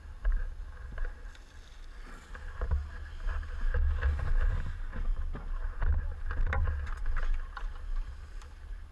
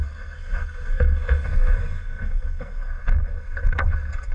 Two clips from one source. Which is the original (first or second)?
first